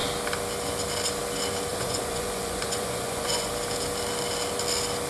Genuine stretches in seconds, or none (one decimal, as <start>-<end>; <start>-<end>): 0.0-1.7; 3.5-5.1